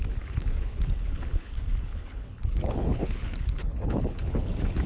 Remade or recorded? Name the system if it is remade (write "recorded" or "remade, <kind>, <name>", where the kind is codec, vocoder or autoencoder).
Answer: remade, codec, HILCodec